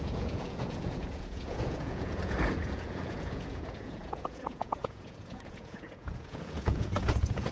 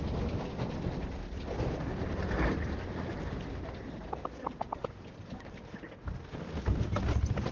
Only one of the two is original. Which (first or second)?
second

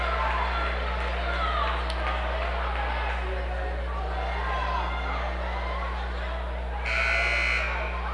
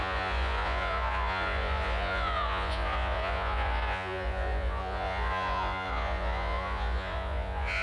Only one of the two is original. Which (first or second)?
first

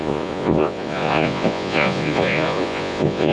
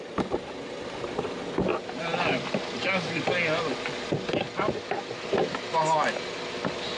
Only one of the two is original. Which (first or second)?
second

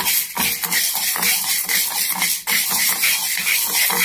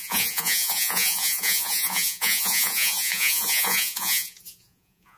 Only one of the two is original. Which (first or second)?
first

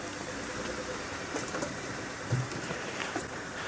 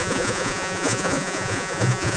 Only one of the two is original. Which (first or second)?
first